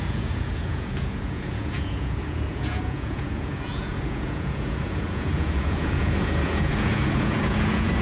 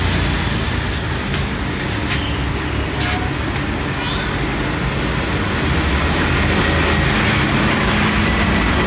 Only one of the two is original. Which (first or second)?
second